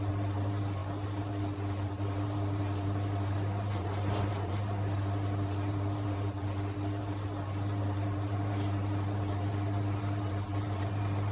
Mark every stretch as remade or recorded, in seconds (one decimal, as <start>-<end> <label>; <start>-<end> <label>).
0.0-11.3 recorded